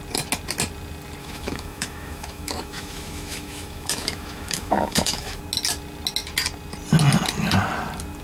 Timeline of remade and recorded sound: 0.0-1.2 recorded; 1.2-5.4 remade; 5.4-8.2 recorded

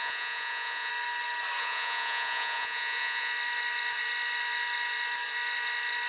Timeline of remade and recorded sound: 0.0-0.9 remade; 0.9-1.6 recorded; 1.6-3.3 remade; 3.3-6.1 recorded

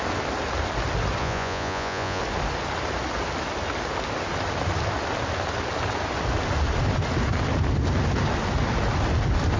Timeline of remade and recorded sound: 0.0-1.2 recorded; 1.2-2.2 remade; 2.2-9.6 recorded

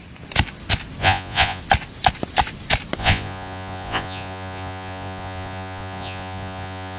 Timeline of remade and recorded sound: 0.0-1.0 recorded; 1.0-1.6 remade; 1.6-3.0 recorded; 3.0-7.0 remade

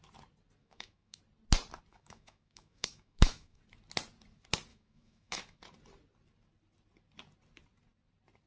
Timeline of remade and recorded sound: 0.0-0.6 recorded; 0.6-1.2 remade; 1.2-1.9 recorded; 1.9-3.6 remade; 3.6-4.7 recorded; 4.7-5.6 remade; 5.6-8.5 recorded

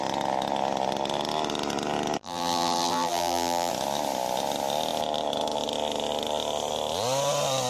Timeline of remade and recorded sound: 0.0-2.2 recorded; 2.2-3.7 remade; 3.7-7.7 recorded